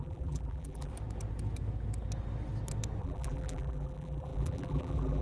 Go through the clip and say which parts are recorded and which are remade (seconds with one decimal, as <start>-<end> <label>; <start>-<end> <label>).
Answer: 0.0-0.9 remade; 0.9-3.0 recorded; 3.0-5.2 remade